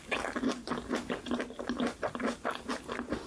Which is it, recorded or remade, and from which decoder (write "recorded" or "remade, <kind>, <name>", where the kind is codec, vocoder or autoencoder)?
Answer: recorded